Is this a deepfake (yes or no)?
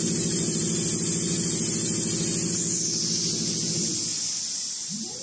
no